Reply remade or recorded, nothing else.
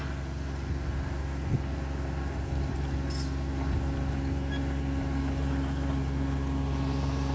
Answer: recorded